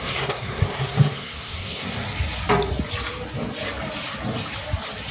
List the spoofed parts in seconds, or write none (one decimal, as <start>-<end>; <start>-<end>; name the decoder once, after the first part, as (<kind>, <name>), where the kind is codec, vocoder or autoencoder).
0.0-2.0 (codec, SNAC)